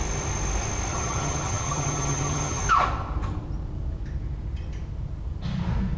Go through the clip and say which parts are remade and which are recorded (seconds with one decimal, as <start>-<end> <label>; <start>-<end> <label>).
0.0-0.9 recorded; 0.9-2.6 remade; 2.6-6.0 recorded